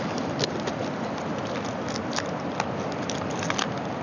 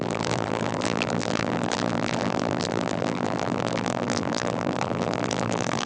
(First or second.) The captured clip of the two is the first